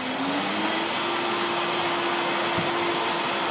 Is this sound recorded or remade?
recorded